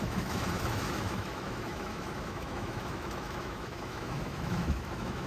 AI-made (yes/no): yes